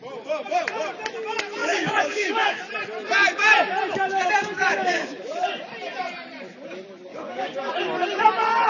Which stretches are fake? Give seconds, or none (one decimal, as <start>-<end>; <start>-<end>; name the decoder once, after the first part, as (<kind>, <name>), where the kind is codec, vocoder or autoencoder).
1.6-2.6 (codec, DAC); 4.1-5.2; 7.1-7.7